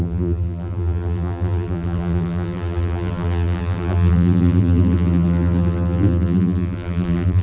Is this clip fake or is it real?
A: fake